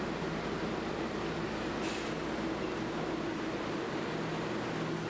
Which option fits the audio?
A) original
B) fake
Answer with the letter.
A